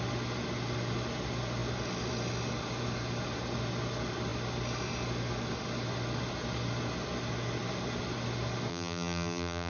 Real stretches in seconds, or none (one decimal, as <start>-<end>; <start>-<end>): 0.0-8.7